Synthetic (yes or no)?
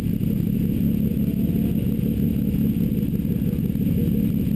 no